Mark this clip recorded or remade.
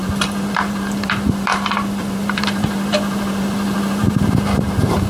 remade